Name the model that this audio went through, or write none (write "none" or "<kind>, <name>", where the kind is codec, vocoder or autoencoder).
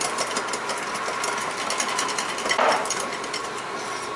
none